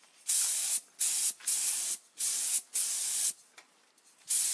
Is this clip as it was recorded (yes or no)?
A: yes